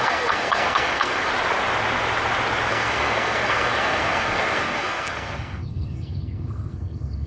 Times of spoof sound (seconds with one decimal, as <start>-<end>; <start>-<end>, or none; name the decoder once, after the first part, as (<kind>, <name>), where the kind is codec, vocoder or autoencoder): 0.0-1.3 (codec, SNAC); 2.7-7.3